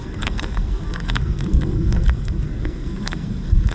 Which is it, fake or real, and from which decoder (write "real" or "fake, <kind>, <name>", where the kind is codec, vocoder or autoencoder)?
fake, codec, SNAC